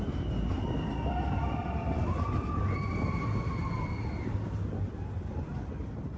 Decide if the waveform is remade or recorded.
recorded